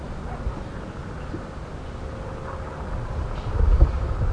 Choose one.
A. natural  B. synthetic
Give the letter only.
A